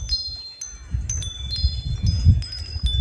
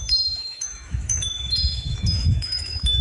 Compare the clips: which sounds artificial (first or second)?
second